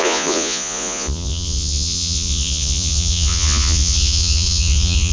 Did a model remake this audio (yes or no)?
yes